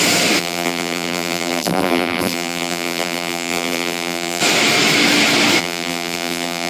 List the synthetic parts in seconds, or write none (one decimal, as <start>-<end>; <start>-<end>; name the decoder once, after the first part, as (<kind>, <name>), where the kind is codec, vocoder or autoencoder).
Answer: 0.4-4.4 (vocoder, BigVGAN v2); 5.6-6.7